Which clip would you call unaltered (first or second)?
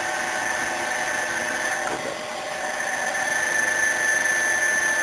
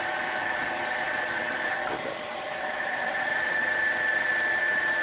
first